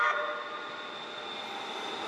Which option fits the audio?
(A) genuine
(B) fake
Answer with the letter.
A